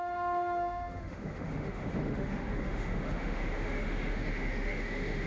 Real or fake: fake